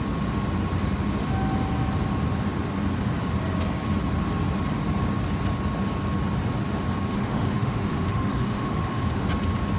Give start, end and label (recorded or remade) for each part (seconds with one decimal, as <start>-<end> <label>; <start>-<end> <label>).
0.0-7.1 recorded; 7.1-9.3 remade; 9.3-9.8 recorded